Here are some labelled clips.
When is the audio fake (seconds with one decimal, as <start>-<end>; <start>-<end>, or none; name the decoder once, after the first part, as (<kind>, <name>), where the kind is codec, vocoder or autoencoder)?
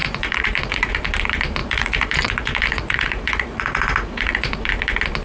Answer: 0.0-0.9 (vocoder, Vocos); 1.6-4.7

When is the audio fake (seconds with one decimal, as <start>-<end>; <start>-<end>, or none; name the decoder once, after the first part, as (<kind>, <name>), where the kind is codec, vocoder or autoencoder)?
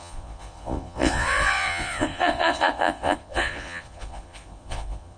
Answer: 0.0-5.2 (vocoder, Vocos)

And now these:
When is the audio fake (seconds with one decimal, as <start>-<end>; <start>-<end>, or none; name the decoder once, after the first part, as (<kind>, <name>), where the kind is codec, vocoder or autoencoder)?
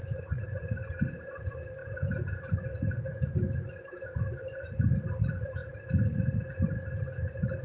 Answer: 0.0-0.6 (vocoder, Vocos)